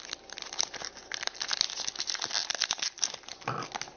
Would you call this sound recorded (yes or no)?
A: yes